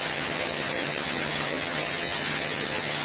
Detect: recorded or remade remade